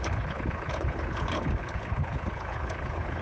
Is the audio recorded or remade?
remade